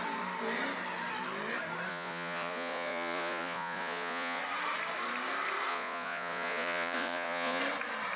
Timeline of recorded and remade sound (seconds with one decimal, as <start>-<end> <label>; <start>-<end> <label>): 0.0-1.9 recorded; 1.9-4.4 remade; 4.4-5.7 recorded; 5.7-7.6 remade; 7.6-8.2 recorded